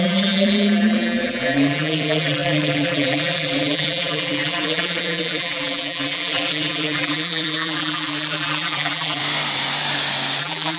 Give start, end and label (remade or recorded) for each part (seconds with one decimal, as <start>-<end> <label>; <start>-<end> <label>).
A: 0.0-9.2 remade; 9.2-10.4 recorded; 10.4-10.8 remade